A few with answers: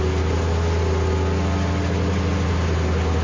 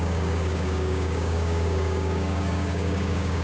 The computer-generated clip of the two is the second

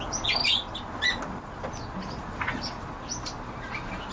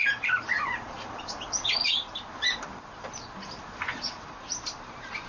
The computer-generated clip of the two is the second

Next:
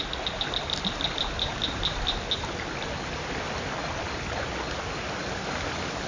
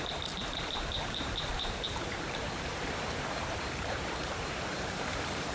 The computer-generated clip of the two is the second